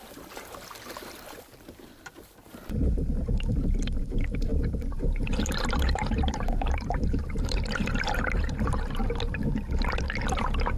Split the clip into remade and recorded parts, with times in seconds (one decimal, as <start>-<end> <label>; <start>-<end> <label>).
0.0-9.0 remade; 9.0-10.8 recorded